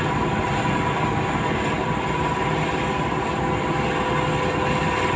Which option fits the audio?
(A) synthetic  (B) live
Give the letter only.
B